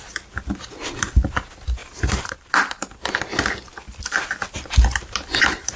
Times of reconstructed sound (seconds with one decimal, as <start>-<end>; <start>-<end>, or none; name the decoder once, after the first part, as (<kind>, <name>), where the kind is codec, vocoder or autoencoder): 1.8-2.4 (vocoder, BigVGAN v2)